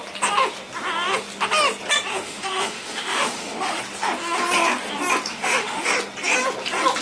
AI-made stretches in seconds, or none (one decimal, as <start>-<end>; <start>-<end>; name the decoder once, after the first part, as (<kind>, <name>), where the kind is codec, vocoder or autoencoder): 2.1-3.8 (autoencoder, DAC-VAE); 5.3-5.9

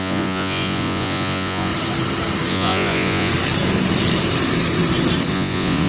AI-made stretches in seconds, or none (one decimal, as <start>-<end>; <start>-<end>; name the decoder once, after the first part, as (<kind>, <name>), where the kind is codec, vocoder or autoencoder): 0.0-1.7 (vocoder, Vocos); 2.5-3.3; 5.3-5.9

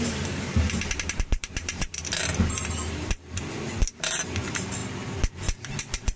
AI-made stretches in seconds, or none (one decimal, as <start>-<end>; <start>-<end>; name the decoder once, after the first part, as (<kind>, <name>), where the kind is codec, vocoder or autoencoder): 0.0-2.0 (vocoder, BigVGAN v2); 3.8-4.8; 5.3-6.2

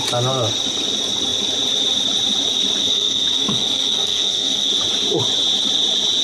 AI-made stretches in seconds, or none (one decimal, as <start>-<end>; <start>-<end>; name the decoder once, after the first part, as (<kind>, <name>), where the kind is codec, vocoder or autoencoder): 2.8-4.7 (codec, SNAC)

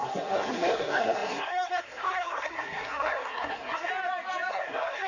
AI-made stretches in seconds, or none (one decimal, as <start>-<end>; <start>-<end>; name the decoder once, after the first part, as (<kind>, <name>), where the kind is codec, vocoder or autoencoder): 0.0-3.9 (codec, SNAC); 4.5-5.1

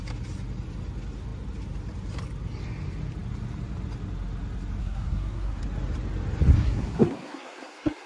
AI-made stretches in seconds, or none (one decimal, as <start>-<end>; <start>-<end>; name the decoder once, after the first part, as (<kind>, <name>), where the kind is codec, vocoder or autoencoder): 4.8-5.6 (codec, SNAC); 6.5-8.1